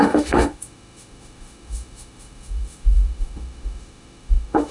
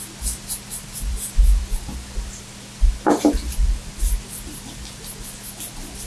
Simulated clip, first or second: first